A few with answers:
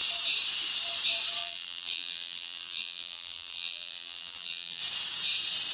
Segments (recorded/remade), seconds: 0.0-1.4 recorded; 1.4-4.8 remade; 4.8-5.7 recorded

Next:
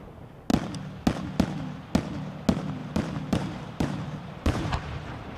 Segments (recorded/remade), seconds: 0.0-2.8 recorded; 2.8-5.4 remade

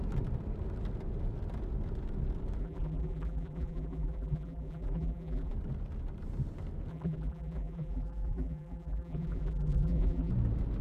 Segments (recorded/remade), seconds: 0.0-2.6 recorded; 2.6-5.5 remade; 5.5-6.9 recorded; 6.9-10.3 remade; 10.3-10.8 recorded

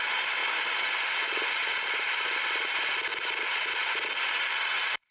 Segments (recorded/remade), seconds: 0.0-5.1 recorded

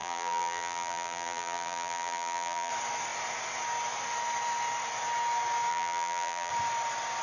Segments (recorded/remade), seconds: 0.0-2.7 remade; 2.7-5.7 recorded; 5.7-6.5 remade; 6.5-7.2 recorded

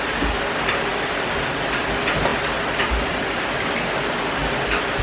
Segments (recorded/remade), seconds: 0.0-0.9 recorded; 0.9-1.5 remade; 1.5-2.3 recorded; 2.3-5.0 remade